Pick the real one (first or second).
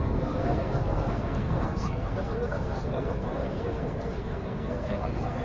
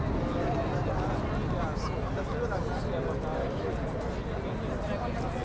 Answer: second